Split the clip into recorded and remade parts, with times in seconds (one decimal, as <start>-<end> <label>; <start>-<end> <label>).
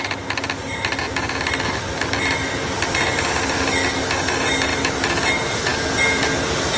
0.0-6.8 recorded